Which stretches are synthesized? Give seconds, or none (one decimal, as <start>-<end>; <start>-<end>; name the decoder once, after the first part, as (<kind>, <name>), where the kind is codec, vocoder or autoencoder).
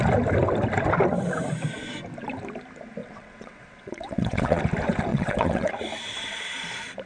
3.0-4.6 (vocoder, WaveNeXt); 5.1-5.7